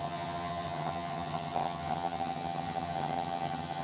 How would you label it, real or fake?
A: fake